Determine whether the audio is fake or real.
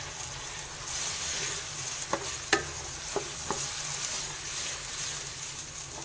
real